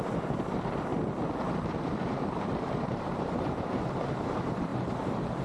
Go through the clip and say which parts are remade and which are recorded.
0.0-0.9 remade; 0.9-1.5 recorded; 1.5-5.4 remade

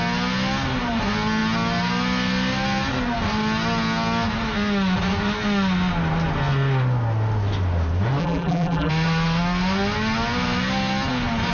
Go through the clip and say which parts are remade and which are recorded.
0.0-8.2 recorded; 8.2-8.9 remade; 8.9-11.5 recorded

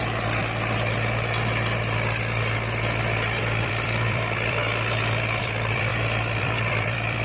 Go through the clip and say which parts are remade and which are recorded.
0.0-0.4 remade; 0.4-3.4 recorded; 3.4-4.6 remade; 4.6-5.4 recorded; 5.4-5.9 remade; 5.9-6.4 recorded; 6.4-7.2 remade